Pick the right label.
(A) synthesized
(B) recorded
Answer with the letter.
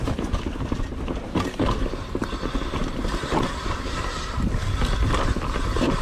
B